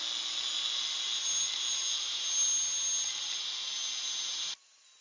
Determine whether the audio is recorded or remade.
recorded